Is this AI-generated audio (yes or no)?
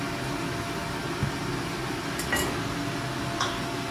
no